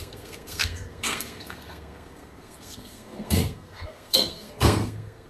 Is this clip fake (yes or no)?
yes